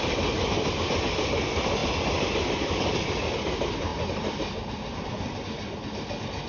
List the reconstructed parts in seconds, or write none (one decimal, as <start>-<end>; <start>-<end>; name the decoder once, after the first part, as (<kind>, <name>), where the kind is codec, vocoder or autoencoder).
none